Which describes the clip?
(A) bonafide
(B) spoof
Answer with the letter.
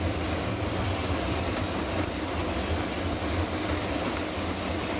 A